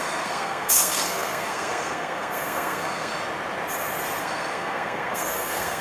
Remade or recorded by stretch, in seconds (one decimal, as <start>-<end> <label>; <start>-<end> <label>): 0.0-3.1 remade; 3.1-4.2 recorded; 4.2-5.8 remade

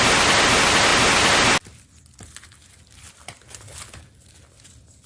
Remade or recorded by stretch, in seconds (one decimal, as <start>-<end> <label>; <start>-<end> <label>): 0.0-5.1 recorded

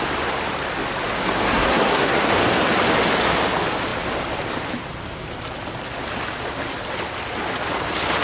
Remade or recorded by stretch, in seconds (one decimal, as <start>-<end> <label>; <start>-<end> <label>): 0.0-1.5 recorded; 1.5-2.3 remade; 2.3-8.2 recorded

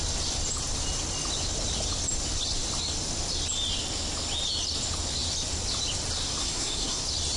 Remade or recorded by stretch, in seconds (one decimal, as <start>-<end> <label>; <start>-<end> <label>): 0.0-6.4 recorded; 6.4-7.0 remade; 7.0-7.4 recorded

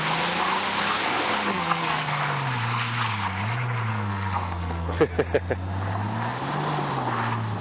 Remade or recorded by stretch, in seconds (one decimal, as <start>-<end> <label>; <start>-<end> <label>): 0.0-1.5 recorded; 1.5-2.2 remade; 2.2-3.9 recorded; 3.9-5.0 remade; 5.0-7.6 recorded

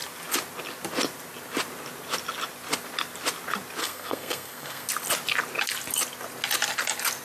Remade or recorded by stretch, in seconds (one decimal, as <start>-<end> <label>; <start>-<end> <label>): 0.0-3.8 recorded; 3.8-4.9 remade; 4.9-7.2 recorded

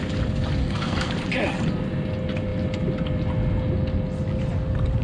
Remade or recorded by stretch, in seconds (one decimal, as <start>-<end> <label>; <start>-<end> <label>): 0.0-0.6 recorded; 0.6-1.1 remade; 1.1-5.0 recorded